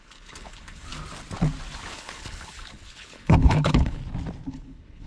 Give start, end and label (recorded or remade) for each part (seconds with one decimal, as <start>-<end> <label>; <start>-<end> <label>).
0.0-0.9 remade; 0.9-1.9 recorded; 1.9-4.0 remade; 4.0-4.5 recorded; 4.5-5.1 remade